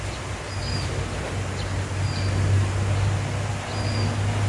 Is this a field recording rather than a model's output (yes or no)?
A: yes